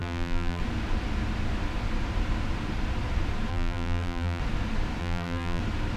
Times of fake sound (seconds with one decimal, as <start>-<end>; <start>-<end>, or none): 0.0-0.6; 3.5-4.4; 5.0-5.6